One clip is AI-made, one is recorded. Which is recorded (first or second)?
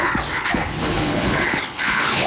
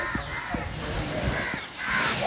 second